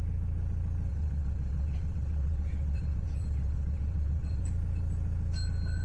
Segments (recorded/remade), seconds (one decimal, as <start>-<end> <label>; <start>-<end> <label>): 0.0-0.9 recorded; 0.9-4.4 remade; 4.4-5.8 recorded

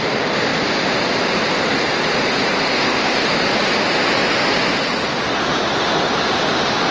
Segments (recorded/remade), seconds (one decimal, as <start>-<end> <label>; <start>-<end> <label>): 0.0-2.7 recorded; 2.7-3.2 remade; 3.2-6.9 recorded